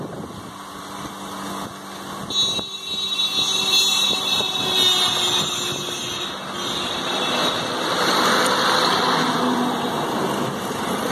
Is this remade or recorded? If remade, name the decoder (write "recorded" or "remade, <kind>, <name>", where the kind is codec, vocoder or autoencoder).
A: recorded